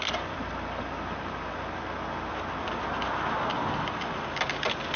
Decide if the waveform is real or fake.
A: real